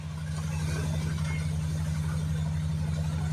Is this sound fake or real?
real